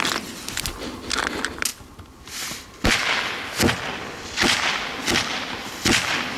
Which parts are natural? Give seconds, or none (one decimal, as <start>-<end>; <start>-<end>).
0.0-6.4